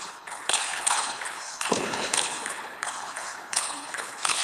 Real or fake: fake